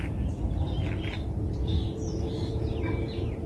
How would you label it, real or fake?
real